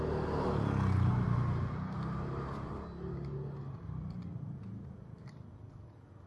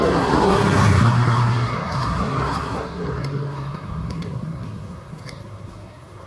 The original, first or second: first